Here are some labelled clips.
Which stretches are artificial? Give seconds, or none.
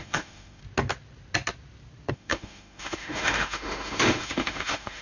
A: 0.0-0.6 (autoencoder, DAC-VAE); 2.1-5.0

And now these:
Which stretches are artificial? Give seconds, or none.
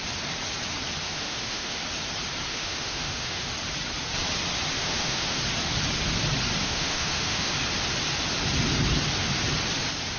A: 1.0-1.8 (autoencoder, DAC-VAE); 2.5-3.5; 4.8-5.4; 6.6-7.5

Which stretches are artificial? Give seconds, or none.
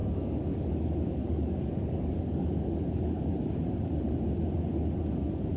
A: 0.0-0.7 (codec, DAC); 1.2-3.2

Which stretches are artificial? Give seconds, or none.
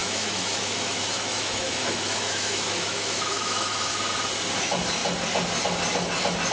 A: 0.0-3.9 (autoencoder, DAC-VAE)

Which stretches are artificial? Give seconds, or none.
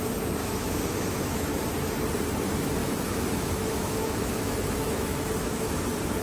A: 0.4-1.6 (autoencoder, DAC-VAE); 2.8-5.8